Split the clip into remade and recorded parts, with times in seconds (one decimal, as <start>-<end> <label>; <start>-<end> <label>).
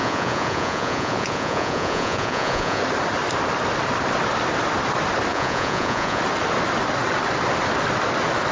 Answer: 0.0-2.8 remade; 2.8-5.3 recorded; 5.3-6.2 remade; 6.2-8.5 recorded